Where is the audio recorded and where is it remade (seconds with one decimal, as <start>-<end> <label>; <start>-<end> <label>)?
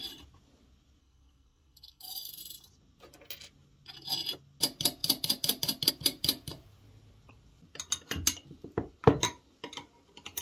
0.0-1.0 recorded; 1.0-2.3 remade; 2.3-10.4 recorded